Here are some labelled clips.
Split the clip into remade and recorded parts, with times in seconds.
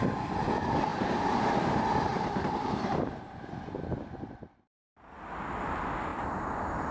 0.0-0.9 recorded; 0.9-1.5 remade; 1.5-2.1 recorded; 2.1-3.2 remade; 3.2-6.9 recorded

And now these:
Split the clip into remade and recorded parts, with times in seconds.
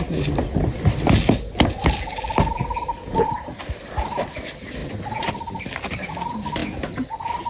0.0-7.5 recorded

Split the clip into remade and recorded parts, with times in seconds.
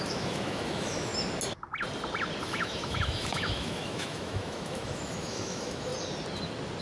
0.0-1.1 remade; 1.1-2.4 recorded; 2.4-5.9 remade; 5.9-6.8 recorded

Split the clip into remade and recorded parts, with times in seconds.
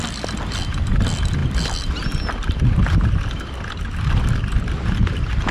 0.0-5.5 recorded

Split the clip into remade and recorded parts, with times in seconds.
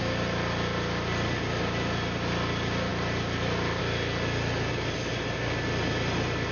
0.0-2.9 recorded; 2.9-3.8 remade; 3.8-6.5 recorded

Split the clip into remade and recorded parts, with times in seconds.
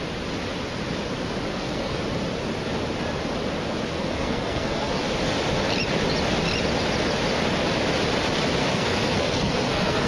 0.0-1.5 recorded; 1.5-2.0 remade; 2.0-3.9 recorded; 3.9-5.0 remade; 5.0-8.6 recorded; 8.6-10.1 remade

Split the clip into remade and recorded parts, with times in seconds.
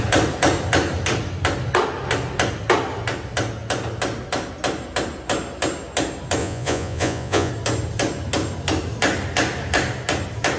0.0-6.4 recorded; 6.4-7.5 remade; 7.5-10.6 recorded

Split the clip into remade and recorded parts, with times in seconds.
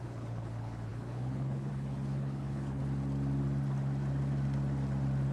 0.0-2.8 remade; 2.8-5.3 recorded